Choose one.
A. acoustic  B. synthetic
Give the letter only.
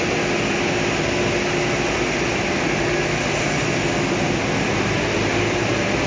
A